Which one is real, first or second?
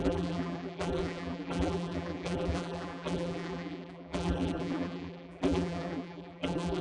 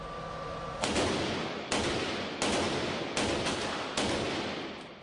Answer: second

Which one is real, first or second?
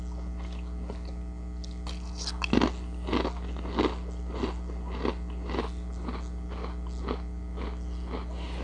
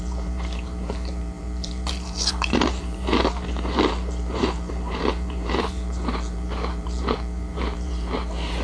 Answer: first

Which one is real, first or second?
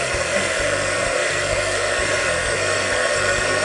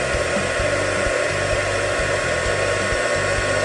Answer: second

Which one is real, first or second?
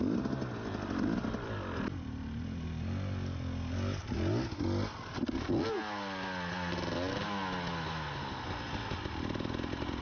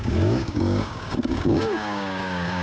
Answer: first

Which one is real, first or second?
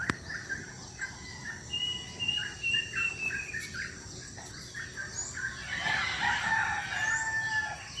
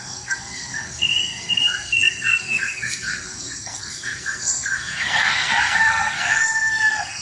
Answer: first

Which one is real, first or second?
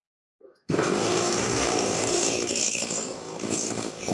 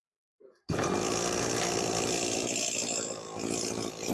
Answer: second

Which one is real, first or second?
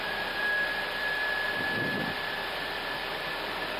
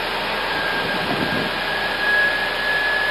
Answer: second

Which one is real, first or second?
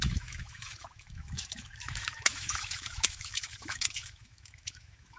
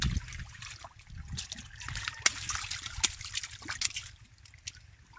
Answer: second